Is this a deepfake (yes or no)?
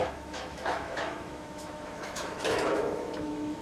yes